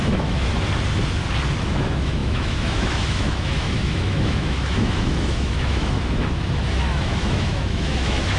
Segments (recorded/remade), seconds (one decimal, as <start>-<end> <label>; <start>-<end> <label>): 0.0-0.5 remade; 0.5-1.6 recorded; 1.6-8.4 remade